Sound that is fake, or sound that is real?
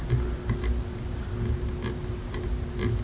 real